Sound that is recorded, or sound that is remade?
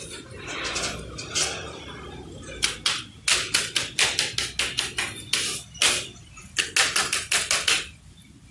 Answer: recorded